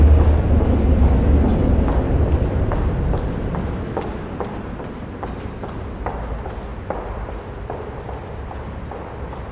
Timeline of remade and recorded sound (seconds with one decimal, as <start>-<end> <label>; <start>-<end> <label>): 0.0-9.5 recorded